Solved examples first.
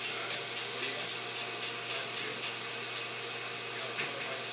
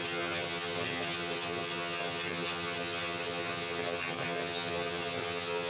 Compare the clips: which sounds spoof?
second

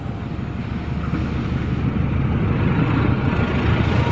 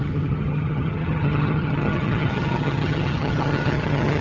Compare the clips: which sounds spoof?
second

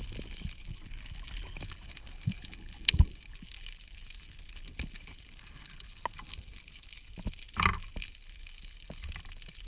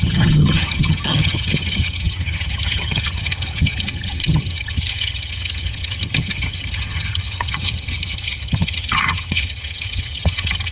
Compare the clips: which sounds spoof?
second